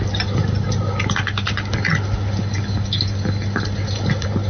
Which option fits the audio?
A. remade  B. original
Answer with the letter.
B